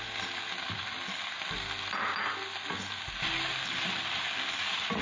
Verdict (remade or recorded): recorded